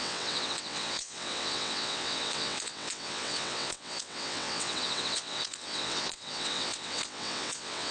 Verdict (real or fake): fake